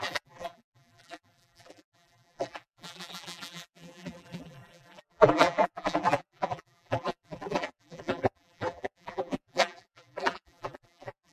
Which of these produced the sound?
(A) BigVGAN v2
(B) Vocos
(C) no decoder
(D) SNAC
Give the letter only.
A